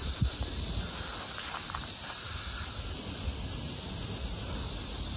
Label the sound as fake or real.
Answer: real